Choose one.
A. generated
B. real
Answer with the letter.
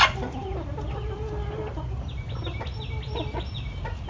B